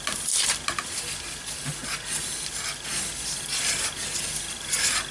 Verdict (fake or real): real